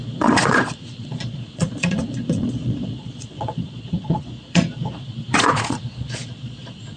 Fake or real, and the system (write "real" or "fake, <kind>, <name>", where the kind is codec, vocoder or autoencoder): fake, vocoder, Vocos